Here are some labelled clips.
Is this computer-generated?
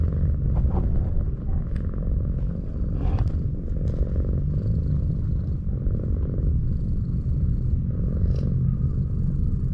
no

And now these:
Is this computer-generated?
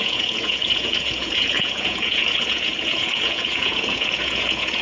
yes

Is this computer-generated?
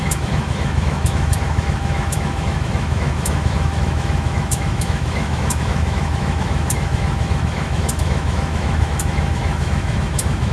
yes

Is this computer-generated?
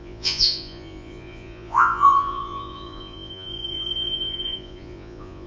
yes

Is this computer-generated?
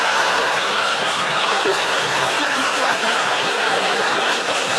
yes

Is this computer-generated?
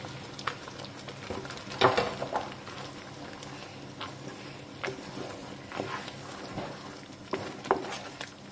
no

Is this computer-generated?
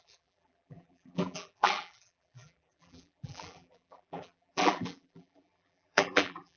yes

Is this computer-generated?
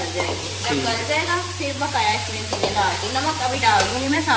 yes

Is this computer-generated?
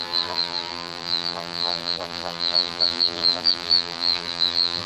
yes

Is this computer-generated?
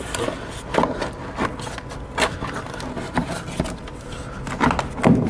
no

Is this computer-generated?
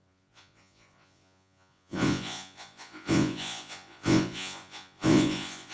yes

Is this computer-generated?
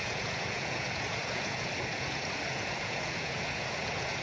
yes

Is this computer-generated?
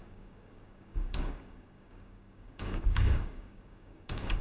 yes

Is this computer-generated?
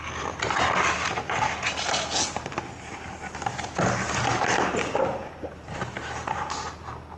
no